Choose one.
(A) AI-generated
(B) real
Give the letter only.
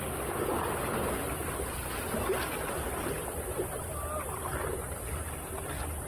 B